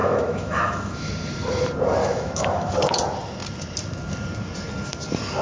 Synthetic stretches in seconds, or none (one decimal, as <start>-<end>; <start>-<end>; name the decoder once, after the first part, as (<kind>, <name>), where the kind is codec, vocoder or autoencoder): 0.0-1.1 (autoencoder, DAC-VAE); 2.0-2.7